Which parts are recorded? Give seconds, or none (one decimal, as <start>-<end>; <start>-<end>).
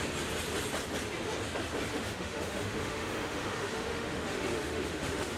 0.0-1.9